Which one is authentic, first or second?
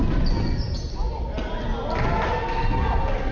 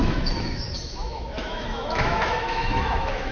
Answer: first